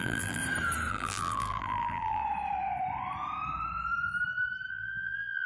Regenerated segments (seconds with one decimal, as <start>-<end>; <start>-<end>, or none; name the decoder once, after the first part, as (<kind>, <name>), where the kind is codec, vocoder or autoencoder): 0.0-0.4 (vocoder, BigVGAN v2); 0.9-2.2; 4.7-5.5